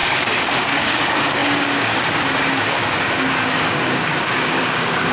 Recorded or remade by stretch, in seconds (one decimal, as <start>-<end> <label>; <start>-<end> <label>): 0.0-5.1 remade